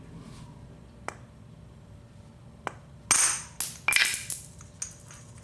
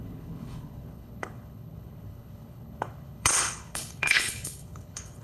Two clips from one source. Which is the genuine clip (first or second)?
first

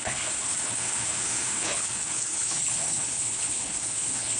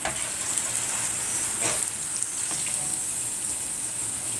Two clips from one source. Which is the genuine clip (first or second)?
second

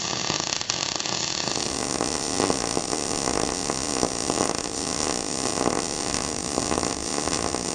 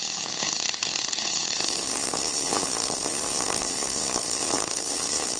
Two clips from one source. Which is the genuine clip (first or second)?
first